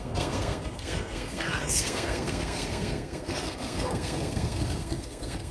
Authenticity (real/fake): fake